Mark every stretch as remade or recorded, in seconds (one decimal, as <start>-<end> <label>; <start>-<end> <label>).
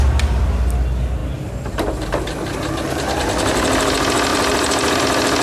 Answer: 0.0-4.3 recorded; 4.3-5.0 remade; 5.0-5.4 recorded